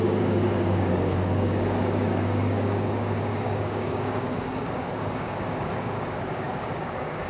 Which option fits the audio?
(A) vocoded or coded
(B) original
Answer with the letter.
A